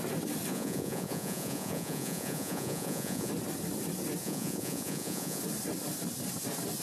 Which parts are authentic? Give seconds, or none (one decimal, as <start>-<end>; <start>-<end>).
0.0-0.5; 3.3-4.2; 5.4-6.8